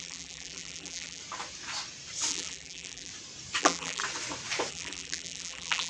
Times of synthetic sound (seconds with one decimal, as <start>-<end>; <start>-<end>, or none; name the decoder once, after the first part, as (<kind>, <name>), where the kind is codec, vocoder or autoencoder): 0.0-1.2 (vocoder, BigVGAN v2); 2.3-3.1; 3.6-4.0; 4.7-5.9